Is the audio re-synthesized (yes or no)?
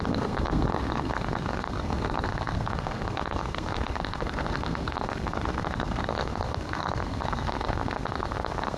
yes